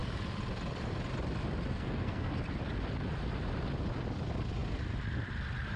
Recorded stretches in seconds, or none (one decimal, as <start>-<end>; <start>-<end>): 0.0-1.7; 2.3-5.8